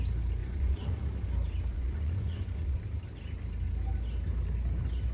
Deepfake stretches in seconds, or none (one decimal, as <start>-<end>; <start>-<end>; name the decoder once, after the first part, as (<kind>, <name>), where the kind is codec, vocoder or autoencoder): 0.4-1.0 (vocoder, Vocos); 1.7-2.8